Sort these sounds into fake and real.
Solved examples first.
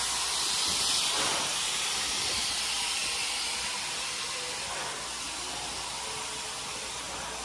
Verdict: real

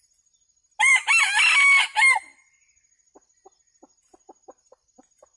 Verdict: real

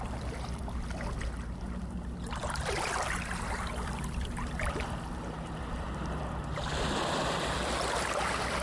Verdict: fake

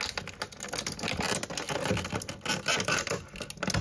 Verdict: real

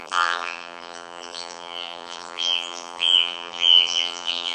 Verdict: fake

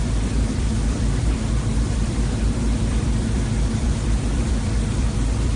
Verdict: fake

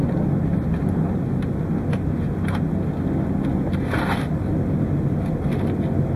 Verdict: real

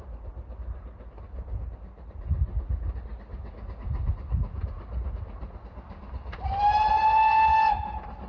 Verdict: real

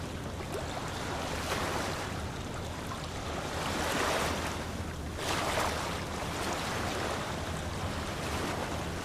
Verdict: real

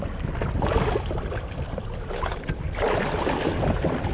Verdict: real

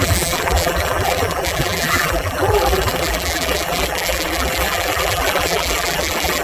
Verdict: fake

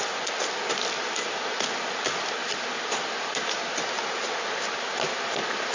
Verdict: real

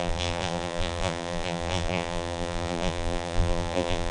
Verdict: fake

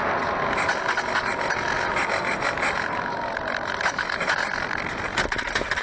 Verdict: real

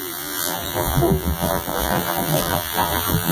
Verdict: fake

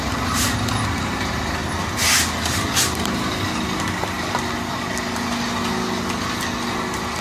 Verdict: fake